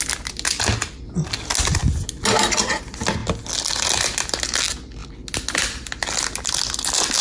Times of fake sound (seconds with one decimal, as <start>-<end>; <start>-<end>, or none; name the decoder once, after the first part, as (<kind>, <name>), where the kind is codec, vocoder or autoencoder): none